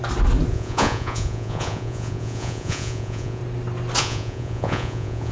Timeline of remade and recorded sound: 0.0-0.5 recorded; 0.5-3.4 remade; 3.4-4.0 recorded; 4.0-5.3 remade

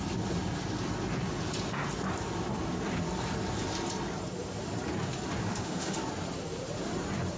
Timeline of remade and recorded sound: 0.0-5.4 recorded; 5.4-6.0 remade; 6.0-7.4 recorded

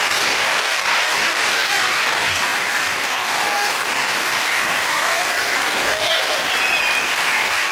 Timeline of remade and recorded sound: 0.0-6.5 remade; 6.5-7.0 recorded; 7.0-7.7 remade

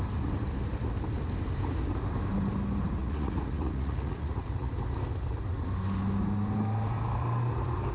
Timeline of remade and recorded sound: 0.0-3.0 recorded; 3.0-4.7 remade; 4.7-7.9 recorded

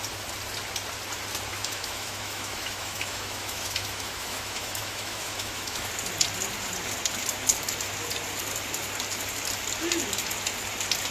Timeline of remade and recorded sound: 0.0-1.5 recorded; 1.5-5.9 remade; 5.9-11.1 recorded

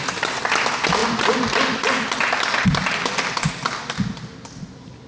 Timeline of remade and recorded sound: 0.0-5.1 recorded

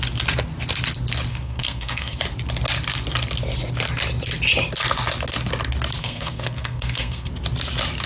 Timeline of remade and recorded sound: 0.0-1.3 recorded; 1.3-2.2 remade; 2.2-6.0 recorded; 6.0-7.3 remade; 7.3-8.1 recorded

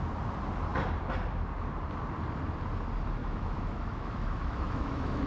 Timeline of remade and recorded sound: 0.0-3.2 recorded; 3.2-5.3 remade